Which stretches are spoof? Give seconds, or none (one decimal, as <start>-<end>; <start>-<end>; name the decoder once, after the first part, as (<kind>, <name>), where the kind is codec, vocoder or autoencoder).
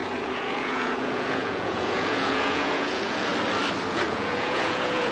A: 0.0-3.3 (vocoder, Vocos); 3.9-5.1